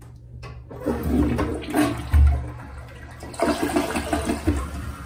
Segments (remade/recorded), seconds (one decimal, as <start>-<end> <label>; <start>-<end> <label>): 0.0-5.1 recorded